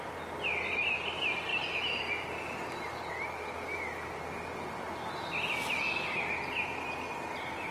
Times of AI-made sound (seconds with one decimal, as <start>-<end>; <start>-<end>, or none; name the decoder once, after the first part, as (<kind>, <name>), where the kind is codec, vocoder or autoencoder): 1.5-3.1 (vocoder, BigVGAN v2)